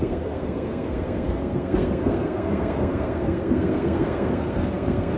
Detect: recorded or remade remade